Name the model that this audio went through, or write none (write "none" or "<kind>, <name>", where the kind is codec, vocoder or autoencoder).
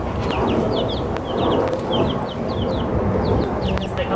none